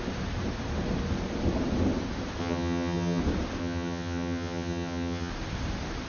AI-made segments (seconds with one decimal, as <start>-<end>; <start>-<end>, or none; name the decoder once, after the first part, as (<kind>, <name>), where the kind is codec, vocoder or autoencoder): 2.4-3.2 (vocoder, HiFi-GAN); 3.6-5.3